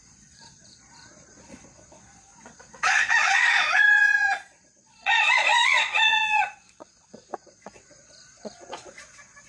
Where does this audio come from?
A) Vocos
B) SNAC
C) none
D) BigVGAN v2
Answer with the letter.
A